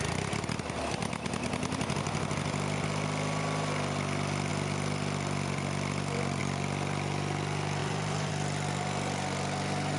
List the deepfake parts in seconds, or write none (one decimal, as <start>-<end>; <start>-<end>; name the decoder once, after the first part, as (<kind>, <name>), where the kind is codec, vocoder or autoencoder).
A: 7.8-8.3 (vocoder, BigVGAN v2)